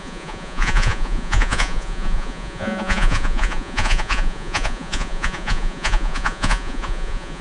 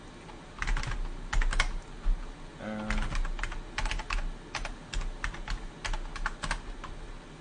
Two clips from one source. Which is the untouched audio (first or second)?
second